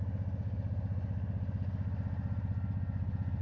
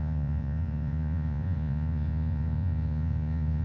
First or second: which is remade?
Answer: second